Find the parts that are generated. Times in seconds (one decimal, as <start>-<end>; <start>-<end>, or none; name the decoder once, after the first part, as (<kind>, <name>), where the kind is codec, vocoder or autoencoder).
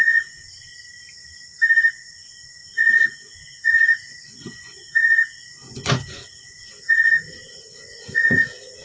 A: 0.0-0.7 (vocoder, Vocos); 1.9-8.8